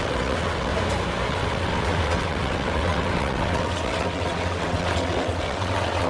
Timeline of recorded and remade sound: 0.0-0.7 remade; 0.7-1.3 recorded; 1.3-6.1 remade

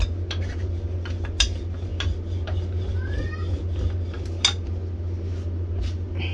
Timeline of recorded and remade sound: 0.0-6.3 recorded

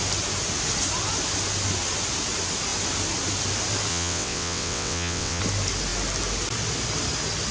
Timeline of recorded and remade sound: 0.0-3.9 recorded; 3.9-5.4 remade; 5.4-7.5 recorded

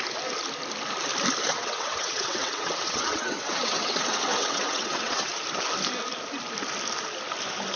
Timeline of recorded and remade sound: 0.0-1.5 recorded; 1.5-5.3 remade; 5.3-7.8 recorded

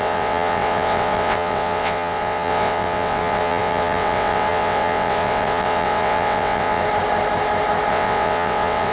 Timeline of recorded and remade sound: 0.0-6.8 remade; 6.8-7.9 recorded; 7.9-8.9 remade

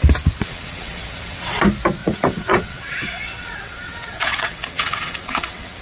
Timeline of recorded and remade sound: 0.0-0.4 recorded; 0.4-1.6 remade; 1.6-2.0 recorded; 2.0-5.8 remade

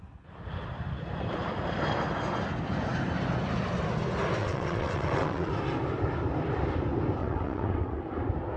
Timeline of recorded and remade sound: 0.0-4.4 recorded; 4.4-5.5 remade; 5.5-7.2 recorded; 7.2-8.0 remade; 8.0-8.6 recorded